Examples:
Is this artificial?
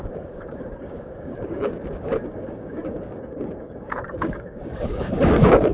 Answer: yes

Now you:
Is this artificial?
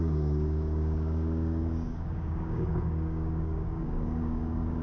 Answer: yes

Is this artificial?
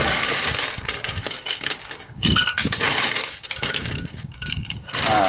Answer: yes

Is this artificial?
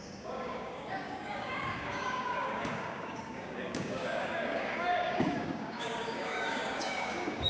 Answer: yes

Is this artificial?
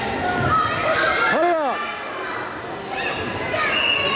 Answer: no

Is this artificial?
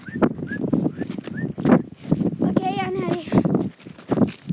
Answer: no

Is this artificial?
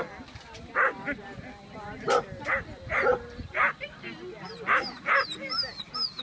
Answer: no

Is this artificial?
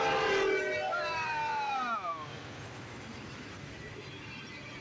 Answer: no